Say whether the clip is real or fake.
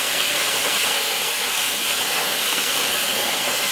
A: fake